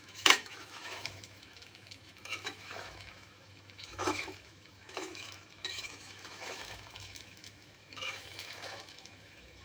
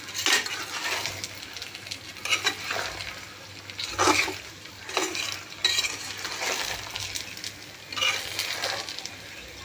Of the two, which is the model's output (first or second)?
first